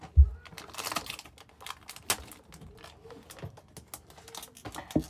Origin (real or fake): real